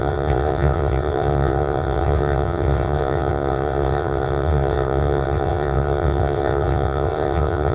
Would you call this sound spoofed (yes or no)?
yes